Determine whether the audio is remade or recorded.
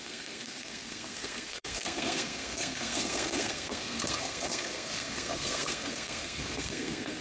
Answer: remade